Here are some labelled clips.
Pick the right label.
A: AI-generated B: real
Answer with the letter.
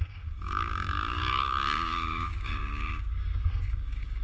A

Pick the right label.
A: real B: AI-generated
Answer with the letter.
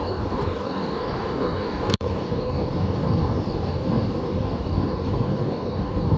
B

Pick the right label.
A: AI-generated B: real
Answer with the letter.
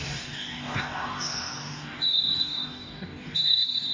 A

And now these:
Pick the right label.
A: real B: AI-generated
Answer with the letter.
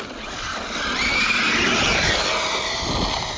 A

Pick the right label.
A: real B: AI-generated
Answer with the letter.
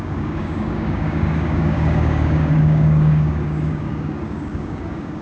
B